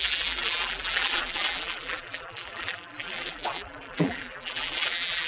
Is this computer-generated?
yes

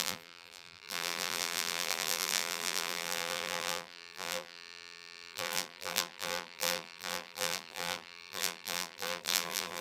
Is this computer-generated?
yes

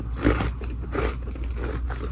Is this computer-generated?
no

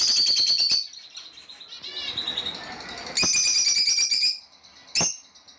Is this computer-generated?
no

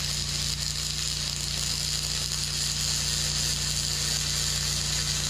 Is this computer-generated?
no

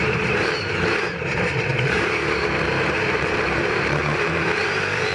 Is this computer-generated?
yes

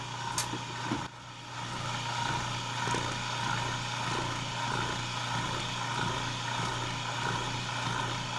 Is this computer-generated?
no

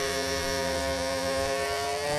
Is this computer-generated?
yes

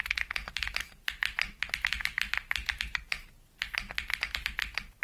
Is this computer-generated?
no